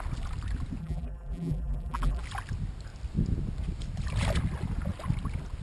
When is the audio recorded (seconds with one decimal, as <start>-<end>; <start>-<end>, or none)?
0.0-0.8; 2.2-5.6